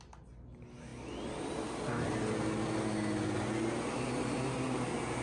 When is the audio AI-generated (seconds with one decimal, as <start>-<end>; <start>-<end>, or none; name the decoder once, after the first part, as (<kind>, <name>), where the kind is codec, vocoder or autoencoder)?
none